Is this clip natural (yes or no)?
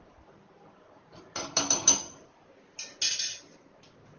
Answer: yes